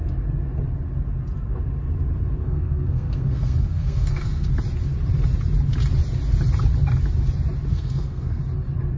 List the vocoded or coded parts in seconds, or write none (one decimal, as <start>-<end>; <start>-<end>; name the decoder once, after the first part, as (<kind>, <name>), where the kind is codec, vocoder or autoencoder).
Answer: 2.4-4.5 (codec, SNAC); 7.7-8.4